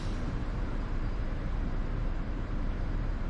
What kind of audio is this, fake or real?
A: fake